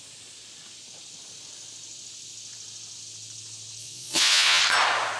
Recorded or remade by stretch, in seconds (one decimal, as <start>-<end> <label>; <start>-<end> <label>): 0.0-3.8 recorded; 3.8-4.6 remade; 4.6-5.2 recorded